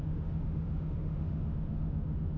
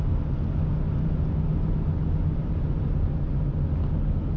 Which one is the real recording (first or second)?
second